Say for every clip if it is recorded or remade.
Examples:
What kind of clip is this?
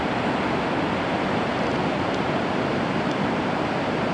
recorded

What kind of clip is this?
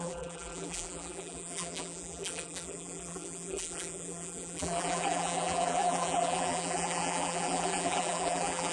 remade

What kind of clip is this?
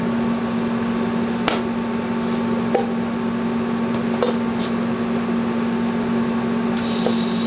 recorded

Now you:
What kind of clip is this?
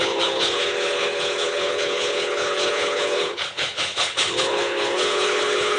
remade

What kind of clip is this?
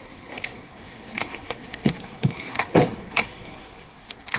remade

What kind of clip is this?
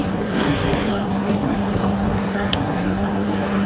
remade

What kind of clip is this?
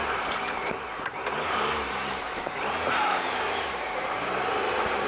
remade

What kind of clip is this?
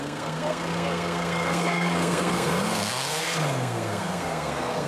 remade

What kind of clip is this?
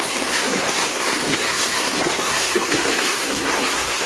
remade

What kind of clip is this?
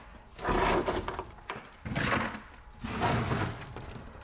recorded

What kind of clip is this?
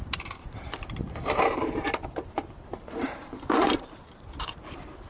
remade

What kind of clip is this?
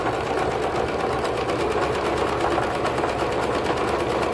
recorded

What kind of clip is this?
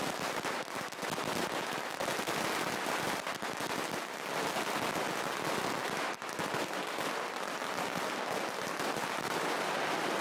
recorded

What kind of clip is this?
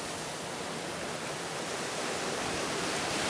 recorded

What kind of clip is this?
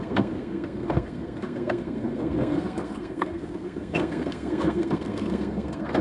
remade